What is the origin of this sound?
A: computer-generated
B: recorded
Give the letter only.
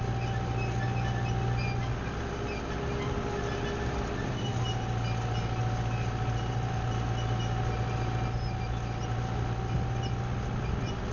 B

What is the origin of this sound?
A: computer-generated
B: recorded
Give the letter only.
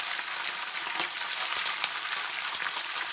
B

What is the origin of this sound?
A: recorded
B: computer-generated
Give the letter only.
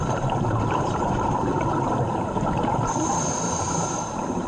B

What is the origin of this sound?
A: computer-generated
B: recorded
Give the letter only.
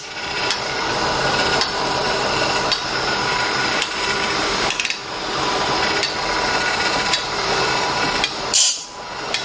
A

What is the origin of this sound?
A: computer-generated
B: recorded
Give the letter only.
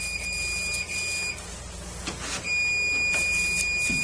B